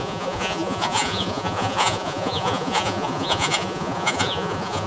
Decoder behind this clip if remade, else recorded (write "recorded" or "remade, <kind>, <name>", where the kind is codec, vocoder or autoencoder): remade, vocoder, Vocos